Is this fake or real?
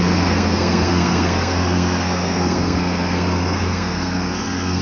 fake